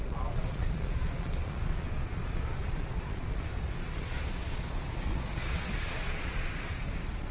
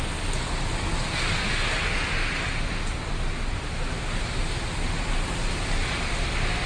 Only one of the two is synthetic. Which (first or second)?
first